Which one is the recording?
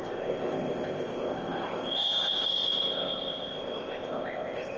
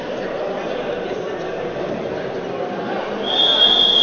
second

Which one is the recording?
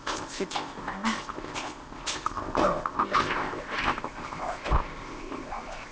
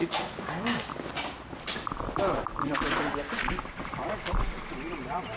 second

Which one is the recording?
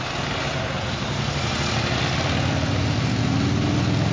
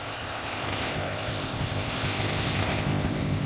first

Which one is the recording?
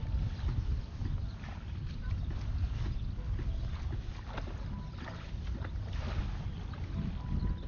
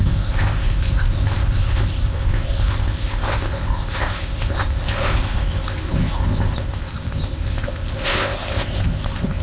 first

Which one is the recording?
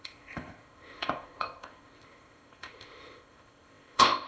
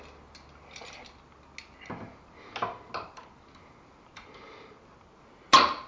second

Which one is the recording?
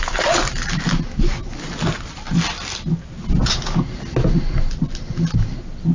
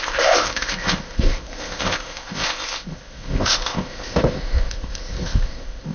first